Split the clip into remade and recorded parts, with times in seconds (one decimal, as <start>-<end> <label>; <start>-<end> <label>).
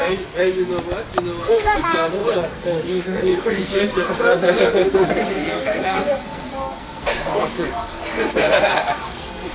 0.0-0.7 remade; 0.7-1.4 recorded; 1.4-9.5 remade